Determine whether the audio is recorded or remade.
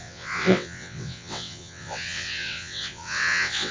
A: remade